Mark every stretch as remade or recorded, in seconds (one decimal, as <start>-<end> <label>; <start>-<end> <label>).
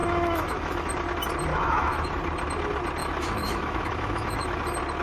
0.0-0.9 remade; 0.9-1.5 recorded; 1.5-2.2 remade; 2.2-3.0 recorded; 3.0-4.6 remade; 4.6-5.0 recorded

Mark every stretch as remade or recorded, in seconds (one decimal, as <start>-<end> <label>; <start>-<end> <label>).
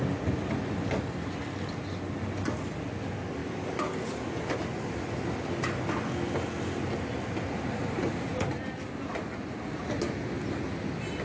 0.0-11.2 recorded